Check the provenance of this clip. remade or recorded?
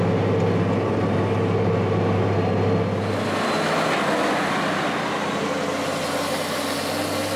recorded